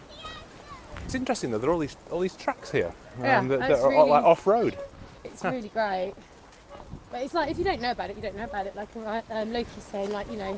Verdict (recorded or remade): recorded